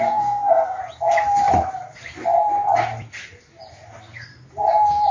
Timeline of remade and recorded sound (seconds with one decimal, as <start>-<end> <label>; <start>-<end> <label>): 0.0-0.8 remade; 0.8-3.9 recorded; 3.9-4.3 remade; 4.3-5.1 recorded

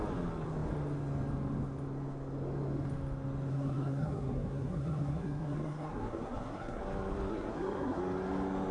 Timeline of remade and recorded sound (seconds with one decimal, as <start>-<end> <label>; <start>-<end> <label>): 0.0-3.5 recorded; 3.5-6.8 remade; 6.8-7.3 recorded; 7.3-8.0 remade; 8.0-8.7 recorded

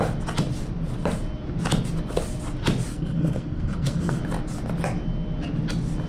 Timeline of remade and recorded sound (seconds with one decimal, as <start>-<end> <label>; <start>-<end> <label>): 0.0-2.9 recorded; 2.9-4.2 remade; 4.2-6.1 recorded

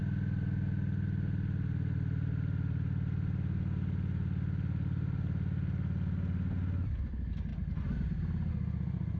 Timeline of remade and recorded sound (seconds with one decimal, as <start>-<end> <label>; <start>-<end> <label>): 0.0-9.2 recorded

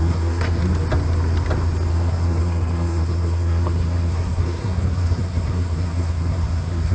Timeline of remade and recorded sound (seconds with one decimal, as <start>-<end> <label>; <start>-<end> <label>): 0.0-0.6 remade; 0.6-1.9 recorded; 1.9-6.9 remade